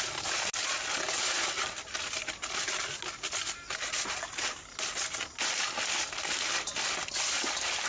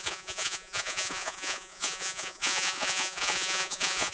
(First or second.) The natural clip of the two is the first